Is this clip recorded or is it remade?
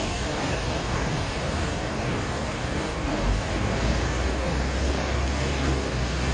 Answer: remade